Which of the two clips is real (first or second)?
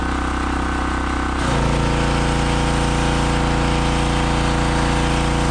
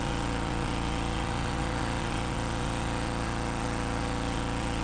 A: first